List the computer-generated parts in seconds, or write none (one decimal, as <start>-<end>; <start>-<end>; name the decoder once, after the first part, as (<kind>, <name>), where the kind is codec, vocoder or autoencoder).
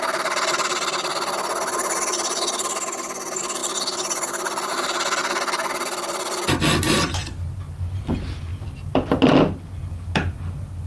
3.6-4.7 (vocoder, BigVGAN v2); 5.2-5.7; 8.5-9.9